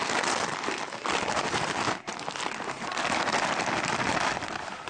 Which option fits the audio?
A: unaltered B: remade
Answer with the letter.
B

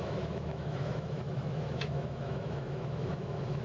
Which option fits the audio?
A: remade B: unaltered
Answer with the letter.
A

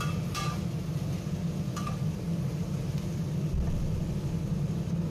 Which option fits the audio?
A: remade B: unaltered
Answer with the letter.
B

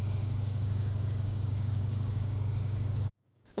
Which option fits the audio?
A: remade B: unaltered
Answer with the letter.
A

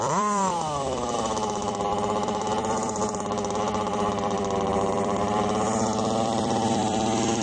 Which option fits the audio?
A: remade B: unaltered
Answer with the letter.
A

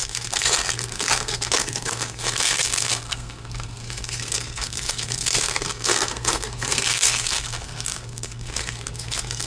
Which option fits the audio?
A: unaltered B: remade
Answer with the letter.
B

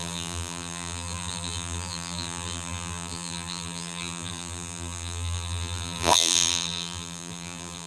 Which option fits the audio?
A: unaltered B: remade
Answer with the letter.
B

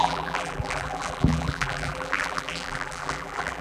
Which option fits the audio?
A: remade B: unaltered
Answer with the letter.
A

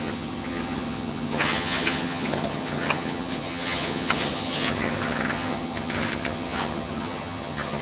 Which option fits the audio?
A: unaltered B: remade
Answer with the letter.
B